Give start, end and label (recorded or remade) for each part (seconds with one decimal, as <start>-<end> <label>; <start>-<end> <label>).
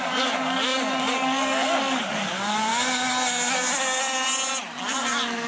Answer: 0.0-2.7 remade; 2.7-4.8 recorded; 4.8-5.5 remade